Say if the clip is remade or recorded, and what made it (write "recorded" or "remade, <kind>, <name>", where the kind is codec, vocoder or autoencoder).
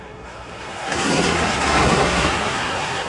remade, codec, SNAC